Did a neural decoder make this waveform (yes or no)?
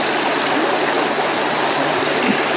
no